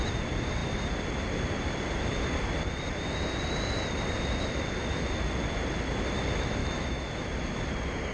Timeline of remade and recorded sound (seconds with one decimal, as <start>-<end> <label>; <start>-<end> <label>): 0.0-6.6 recorded; 6.6-7.1 remade; 7.1-8.1 recorded